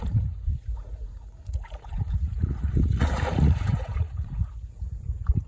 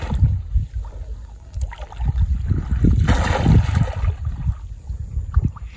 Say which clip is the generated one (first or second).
first